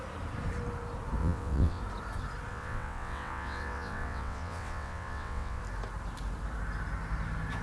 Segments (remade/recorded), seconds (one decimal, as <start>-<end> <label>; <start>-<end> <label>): 0.0-1.2 recorded; 1.2-1.8 remade; 1.8-2.5 recorded; 2.5-5.6 remade; 5.6-7.6 recorded